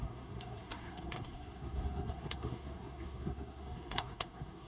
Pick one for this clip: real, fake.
fake